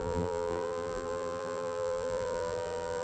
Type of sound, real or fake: fake